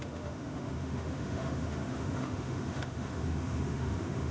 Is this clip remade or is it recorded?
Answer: remade